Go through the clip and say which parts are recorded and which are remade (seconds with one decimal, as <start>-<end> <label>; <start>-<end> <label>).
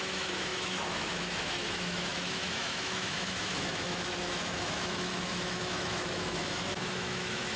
0.0-7.6 remade